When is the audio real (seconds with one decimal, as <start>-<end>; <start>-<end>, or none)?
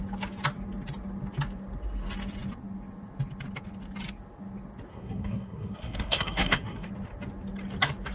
0.0-4.9; 6.9-8.1